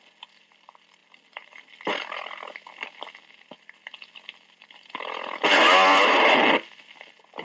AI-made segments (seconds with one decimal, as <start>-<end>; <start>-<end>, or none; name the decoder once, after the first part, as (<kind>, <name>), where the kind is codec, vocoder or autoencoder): none